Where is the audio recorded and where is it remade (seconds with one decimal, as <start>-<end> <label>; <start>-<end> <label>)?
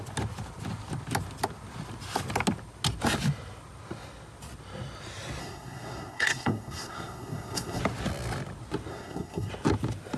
0.0-5.4 recorded; 5.4-7.8 remade; 7.8-8.9 recorded; 8.9-9.5 remade; 9.5-10.2 recorded